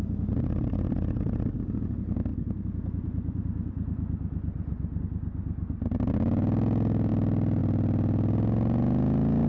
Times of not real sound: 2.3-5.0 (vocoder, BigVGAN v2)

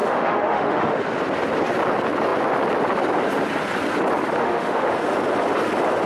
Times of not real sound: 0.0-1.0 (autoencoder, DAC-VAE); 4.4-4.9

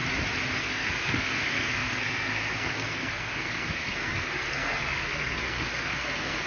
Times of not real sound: 0.5-6.5 (codec, SNAC)

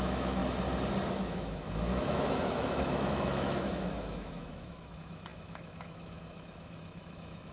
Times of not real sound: 0.0-0.4 (autoencoder, DAC-VAE); 1.1-7.5